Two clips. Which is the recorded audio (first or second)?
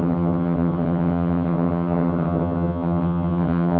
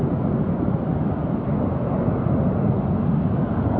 second